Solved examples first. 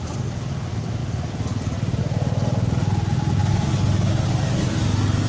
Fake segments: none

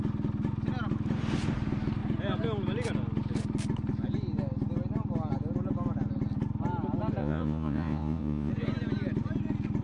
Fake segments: 7.2-8.5 (vocoder, Vocos)

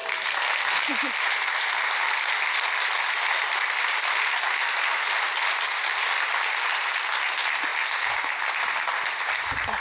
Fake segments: none

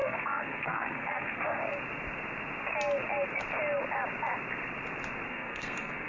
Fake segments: 0.0-1.6 (codec, SNAC); 5.3-6.1

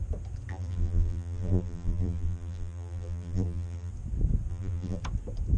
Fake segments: 0.5-3.9 (vocoder, BigVGAN v2); 4.5-5.0

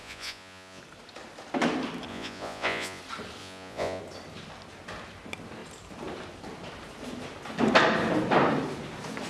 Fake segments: 0.0-0.8 (vocoder, Vocos); 2.1-3.0; 3.4-4.0